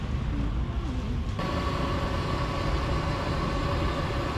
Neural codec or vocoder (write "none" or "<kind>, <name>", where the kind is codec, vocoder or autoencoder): none